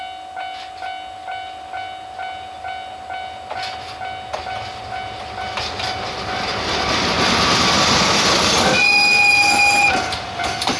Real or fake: real